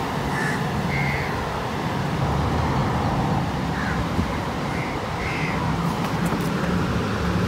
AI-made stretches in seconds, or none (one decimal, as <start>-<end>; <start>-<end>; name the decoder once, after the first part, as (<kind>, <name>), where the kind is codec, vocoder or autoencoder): 2.8-6.4 (vocoder, BigVGAN v2)

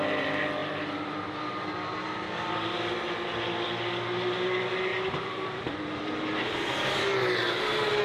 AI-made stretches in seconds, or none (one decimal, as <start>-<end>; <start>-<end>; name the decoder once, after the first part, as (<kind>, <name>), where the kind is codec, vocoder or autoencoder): 4.9-8.0 (vocoder, BigVGAN v2)

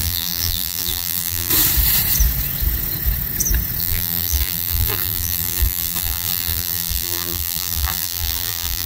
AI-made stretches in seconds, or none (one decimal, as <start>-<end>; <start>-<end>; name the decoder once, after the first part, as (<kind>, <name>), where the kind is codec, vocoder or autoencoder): 0.0-1.5 (vocoder, BigVGAN v2); 3.8-8.9

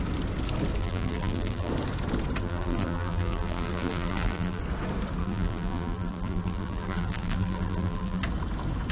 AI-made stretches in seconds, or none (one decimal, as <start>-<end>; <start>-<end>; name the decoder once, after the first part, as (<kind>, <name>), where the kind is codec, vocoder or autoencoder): 0.8-1.7 (vocoder, BigVGAN v2); 2.4-4.6; 5.2-8.2

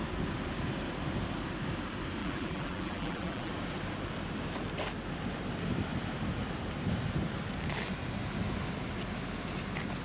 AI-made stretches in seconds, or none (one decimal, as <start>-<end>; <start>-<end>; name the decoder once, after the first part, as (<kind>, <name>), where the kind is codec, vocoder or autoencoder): 2.2-3.5 (vocoder, BigVGAN v2)